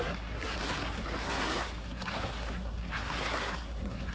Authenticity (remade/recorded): remade